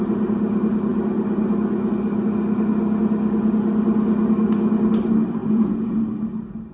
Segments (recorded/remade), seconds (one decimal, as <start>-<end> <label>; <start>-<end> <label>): 0.0-5.4 recorded; 5.4-6.0 remade; 6.0-6.7 recorded